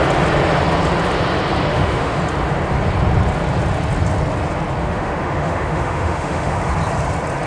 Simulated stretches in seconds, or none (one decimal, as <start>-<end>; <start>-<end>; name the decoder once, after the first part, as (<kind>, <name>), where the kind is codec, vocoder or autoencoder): 1.7-2.2 (autoencoder, DAC-VAE); 4.8-6.6